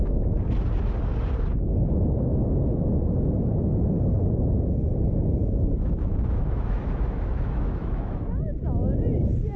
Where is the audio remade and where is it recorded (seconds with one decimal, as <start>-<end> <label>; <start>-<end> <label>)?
0.0-2.3 recorded; 2.3-2.8 remade; 2.8-5.4 recorded; 5.4-8.2 remade; 8.2-9.6 recorded